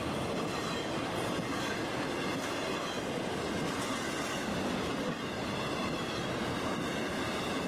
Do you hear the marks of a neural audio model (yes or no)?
no